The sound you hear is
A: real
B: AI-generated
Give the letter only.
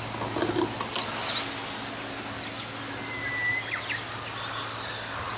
A